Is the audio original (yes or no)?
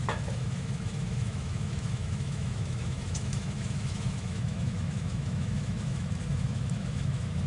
no